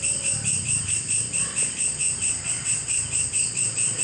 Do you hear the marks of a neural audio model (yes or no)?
no